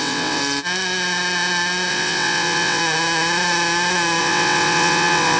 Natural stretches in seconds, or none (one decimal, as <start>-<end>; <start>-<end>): 0.4-1.9; 2.8-4.2